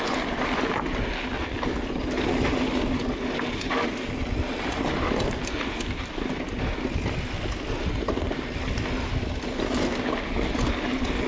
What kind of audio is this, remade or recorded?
recorded